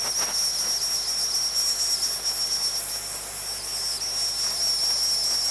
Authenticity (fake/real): real